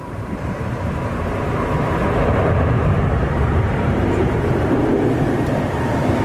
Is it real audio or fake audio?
fake